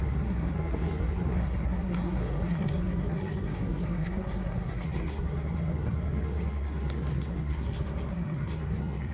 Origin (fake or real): fake